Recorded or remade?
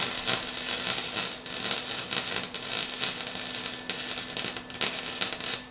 recorded